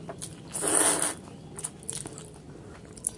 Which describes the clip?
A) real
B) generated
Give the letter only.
A